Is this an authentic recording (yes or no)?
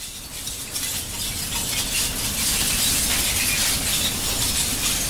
yes